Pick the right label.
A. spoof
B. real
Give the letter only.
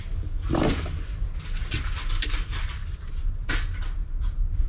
B